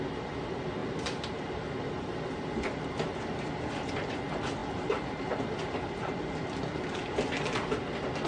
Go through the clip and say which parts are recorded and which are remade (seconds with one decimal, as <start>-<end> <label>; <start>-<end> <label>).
0.0-8.3 recorded